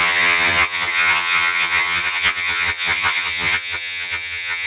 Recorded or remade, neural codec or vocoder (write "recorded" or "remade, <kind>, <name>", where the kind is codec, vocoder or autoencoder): remade, vocoder, HiFi-GAN